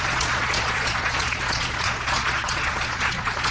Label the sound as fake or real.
fake